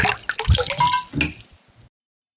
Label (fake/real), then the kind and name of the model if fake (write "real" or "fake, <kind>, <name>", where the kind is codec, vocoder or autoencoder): real